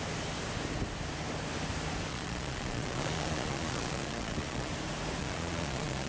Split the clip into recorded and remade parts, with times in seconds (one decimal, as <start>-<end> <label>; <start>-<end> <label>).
0.0-2.1 recorded; 2.1-4.7 remade; 4.7-5.2 recorded; 5.2-6.1 remade